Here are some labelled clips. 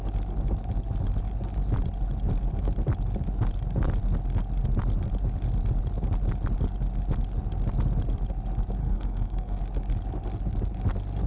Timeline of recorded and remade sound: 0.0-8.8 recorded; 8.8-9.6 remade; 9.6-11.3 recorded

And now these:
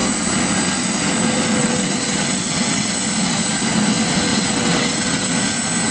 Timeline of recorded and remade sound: 0.0-1.6 recorded; 1.6-2.9 remade; 2.9-4.3 recorded; 4.3-5.3 remade; 5.3-5.9 recorded

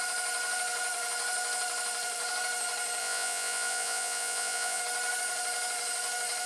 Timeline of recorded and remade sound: 0.0-3.0 recorded; 3.0-4.8 remade; 4.8-6.5 recorded

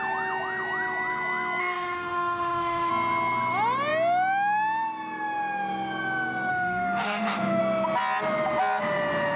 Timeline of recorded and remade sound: 0.0-1.6 recorded; 1.6-2.9 remade; 2.9-6.5 recorded; 6.5-7.6 remade; 7.6-9.4 recorded